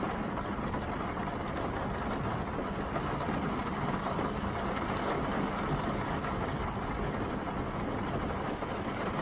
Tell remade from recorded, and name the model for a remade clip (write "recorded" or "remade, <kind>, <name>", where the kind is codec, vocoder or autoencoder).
recorded